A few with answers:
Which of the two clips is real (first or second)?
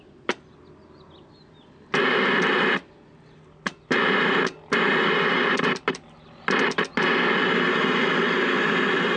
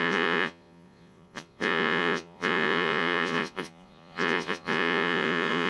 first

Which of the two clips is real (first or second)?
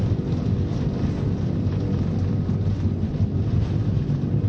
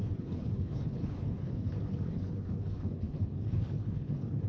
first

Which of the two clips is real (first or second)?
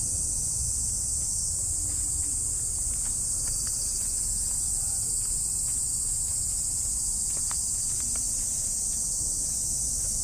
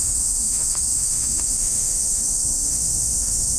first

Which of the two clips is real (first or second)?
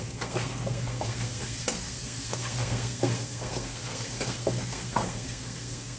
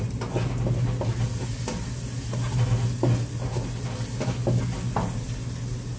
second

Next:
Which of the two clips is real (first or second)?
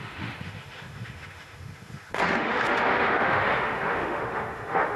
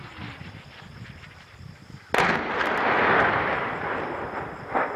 second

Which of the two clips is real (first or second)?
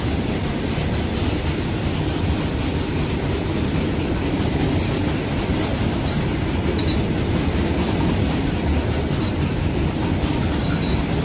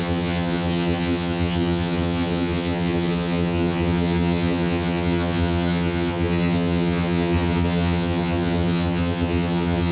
first